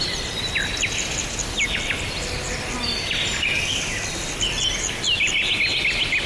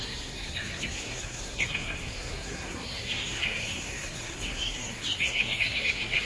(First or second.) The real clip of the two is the first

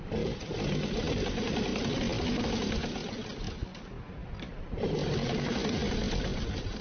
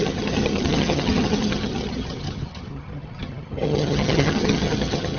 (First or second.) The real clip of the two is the first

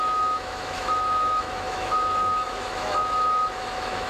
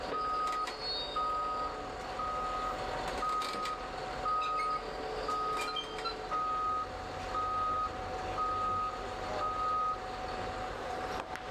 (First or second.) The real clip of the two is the second